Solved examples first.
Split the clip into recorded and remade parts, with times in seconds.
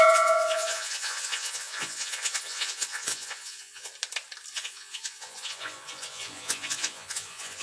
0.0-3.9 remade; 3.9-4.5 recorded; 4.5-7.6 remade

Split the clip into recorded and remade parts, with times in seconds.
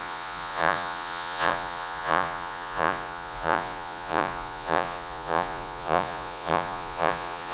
0.0-7.5 remade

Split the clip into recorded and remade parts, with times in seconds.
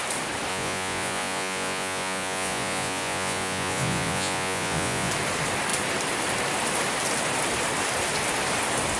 0.0-0.5 recorded; 0.5-5.1 remade; 5.1-9.0 recorded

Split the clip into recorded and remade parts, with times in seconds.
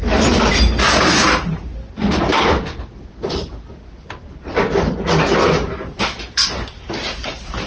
0.0-6.7 recorded; 6.7-7.7 remade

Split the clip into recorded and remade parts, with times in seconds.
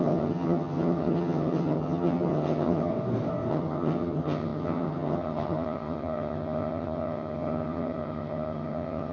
0.0-2.9 remade; 2.9-3.5 recorded; 3.5-9.1 remade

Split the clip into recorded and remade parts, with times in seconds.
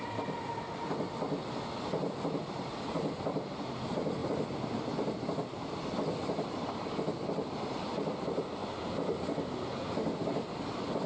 0.0-11.1 recorded